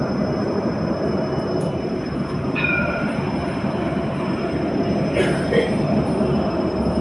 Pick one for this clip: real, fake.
real